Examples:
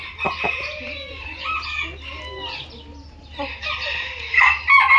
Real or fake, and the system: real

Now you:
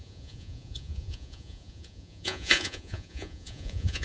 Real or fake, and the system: fake, vocoder, Vocos